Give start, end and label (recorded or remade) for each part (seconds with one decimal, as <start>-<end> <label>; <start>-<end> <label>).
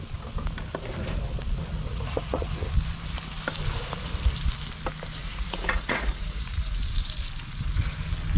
0.0-1.9 recorded; 1.9-2.7 remade; 2.7-5.2 recorded; 5.2-6.8 remade; 6.8-8.4 recorded